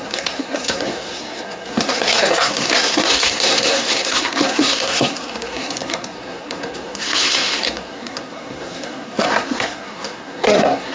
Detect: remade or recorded remade